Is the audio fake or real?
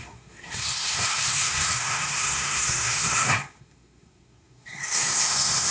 fake